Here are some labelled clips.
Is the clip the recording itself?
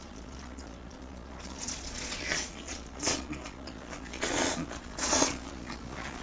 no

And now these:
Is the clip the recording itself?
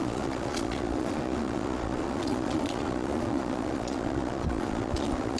no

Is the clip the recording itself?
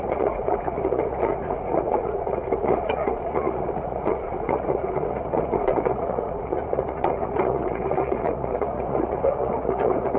no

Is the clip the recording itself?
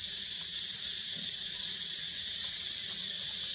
no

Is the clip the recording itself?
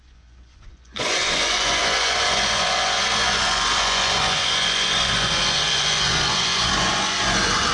no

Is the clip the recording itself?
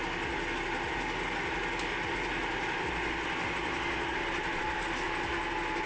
yes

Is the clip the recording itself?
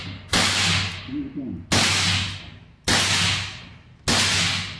yes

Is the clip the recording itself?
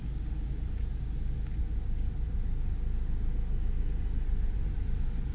yes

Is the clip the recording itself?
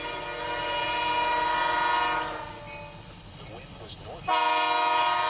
yes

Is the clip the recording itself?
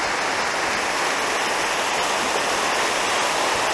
yes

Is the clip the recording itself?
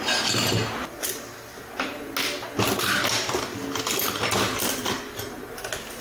yes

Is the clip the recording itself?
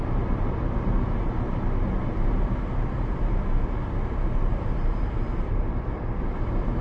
yes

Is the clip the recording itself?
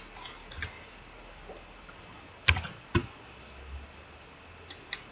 yes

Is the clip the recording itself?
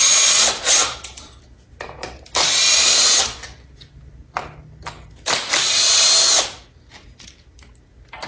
yes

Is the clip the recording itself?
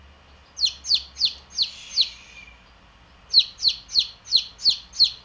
yes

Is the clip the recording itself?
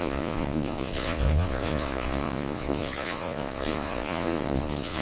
no